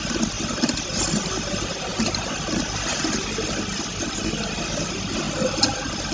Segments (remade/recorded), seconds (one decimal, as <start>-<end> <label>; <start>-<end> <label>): 0.0-6.1 recorded